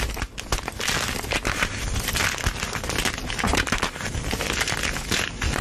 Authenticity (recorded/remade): recorded